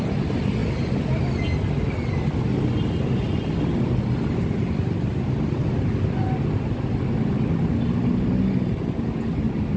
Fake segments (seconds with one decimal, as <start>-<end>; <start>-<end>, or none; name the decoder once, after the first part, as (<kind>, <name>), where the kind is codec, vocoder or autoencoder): none